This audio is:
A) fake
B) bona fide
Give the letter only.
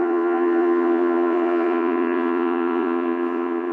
A